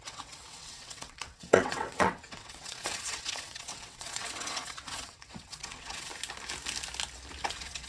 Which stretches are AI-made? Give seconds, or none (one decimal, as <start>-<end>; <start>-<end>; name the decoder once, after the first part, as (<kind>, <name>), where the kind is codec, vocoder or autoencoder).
0.0-6.1 (vocoder, WaveNeXt); 7.5-7.9